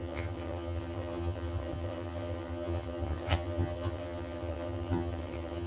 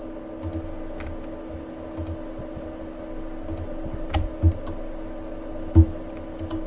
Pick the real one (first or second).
second